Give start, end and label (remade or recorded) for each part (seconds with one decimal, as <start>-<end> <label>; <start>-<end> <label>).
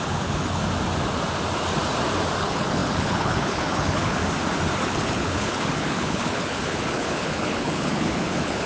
0.0-0.6 remade; 0.6-2.4 recorded; 2.4-4.2 remade; 4.2-4.8 recorded; 4.8-8.7 remade